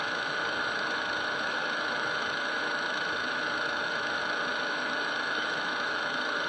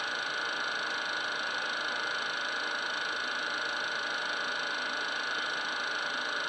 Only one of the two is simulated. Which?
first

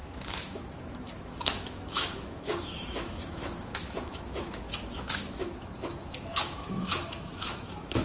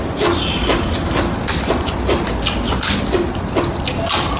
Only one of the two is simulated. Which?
first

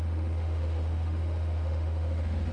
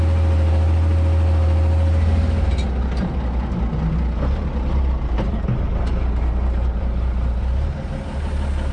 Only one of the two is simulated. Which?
first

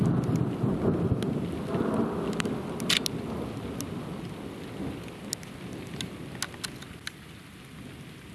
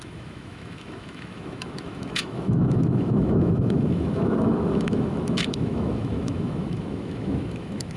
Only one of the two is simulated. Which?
second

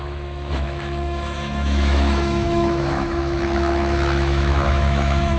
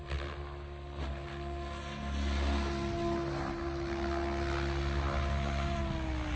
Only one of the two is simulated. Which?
first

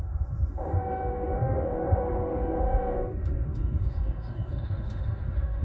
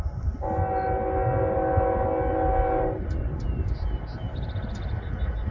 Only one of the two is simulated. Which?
first